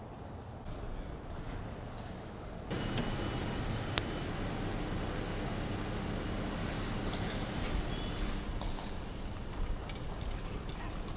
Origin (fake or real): real